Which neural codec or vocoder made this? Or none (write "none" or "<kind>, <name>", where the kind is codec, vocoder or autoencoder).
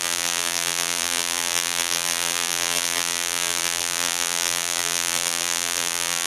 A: vocoder, BigVGAN v2